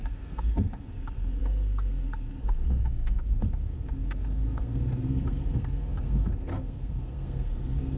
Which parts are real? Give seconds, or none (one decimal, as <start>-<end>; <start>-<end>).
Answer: none